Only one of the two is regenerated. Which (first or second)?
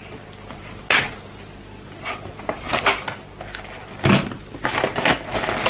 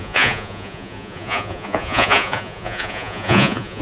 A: second